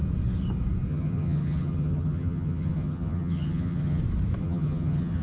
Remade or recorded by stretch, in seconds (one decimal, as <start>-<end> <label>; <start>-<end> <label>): 0.0-0.9 recorded; 0.9-4.0 remade; 4.0-4.4 recorded; 4.4-5.2 remade